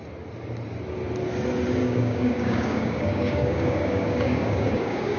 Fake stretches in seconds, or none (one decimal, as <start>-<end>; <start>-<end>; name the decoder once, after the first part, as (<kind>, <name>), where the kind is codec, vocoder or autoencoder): 1.8-5.2 (codec, DAC)